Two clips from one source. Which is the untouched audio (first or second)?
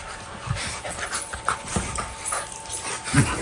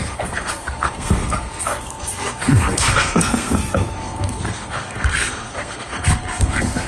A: first